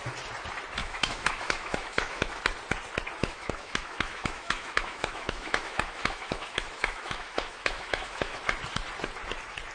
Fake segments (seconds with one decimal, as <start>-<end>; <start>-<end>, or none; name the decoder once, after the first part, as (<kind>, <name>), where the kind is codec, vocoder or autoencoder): 0.8-2.4 (autoencoder, DAC-VAE); 3.2-8.4